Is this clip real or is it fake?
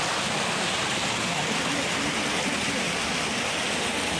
real